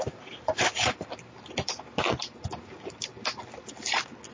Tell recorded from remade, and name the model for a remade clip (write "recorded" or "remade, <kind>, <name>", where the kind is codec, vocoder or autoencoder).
recorded